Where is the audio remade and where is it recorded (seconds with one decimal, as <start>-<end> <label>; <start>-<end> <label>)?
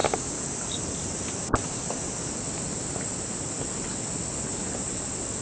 0.0-5.4 recorded